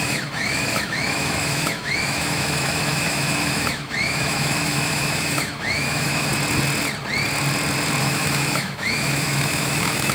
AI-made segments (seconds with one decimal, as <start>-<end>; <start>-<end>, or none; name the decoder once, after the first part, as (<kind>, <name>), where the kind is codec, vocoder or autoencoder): 0.0-6.3 (autoencoder, DAC-VAE); 8.0-10.1